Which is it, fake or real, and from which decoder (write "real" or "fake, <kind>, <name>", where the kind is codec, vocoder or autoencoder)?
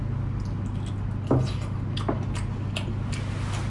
real